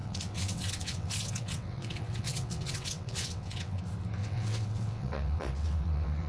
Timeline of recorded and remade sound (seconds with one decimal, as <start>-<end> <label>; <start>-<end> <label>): 0.0-3.8 remade; 3.8-4.2 recorded; 4.2-6.3 remade